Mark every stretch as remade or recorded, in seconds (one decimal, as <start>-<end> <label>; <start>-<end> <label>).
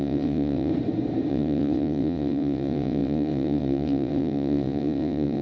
0.0-0.7 remade; 0.7-1.3 recorded; 1.3-5.4 remade